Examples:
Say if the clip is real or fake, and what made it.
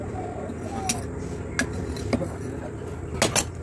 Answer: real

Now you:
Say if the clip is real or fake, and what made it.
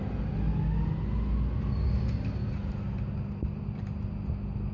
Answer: real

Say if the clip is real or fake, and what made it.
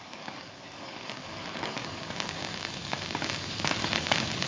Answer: fake, codec, DAC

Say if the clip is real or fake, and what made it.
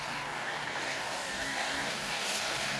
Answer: fake, codec, DAC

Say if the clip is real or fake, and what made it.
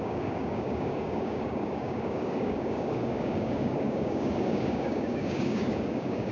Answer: fake, codec, DAC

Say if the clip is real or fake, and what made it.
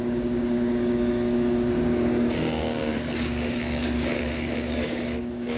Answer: fake, codec, DAC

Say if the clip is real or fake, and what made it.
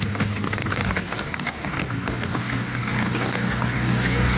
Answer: fake, codec, DAC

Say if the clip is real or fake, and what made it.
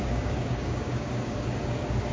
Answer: fake, codec, DAC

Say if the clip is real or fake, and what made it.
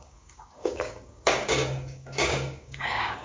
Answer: fake, codec, DAC